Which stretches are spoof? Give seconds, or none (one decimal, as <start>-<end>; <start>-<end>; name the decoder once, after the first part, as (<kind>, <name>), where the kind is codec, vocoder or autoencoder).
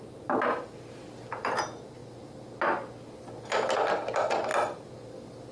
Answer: none